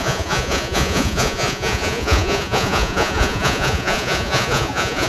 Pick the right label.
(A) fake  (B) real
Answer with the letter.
A